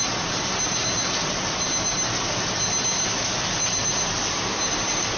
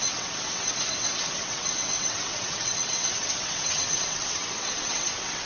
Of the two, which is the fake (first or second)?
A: second